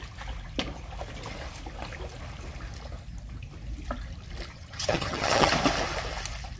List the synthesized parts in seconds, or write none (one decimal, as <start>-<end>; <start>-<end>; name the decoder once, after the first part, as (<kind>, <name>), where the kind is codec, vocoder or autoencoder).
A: 4.5-5.5 (vocoder, HiFi-GAN)